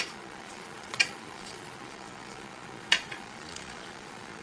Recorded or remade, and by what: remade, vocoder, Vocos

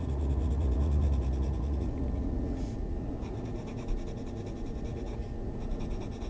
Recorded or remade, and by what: remade, vocoder, Vocos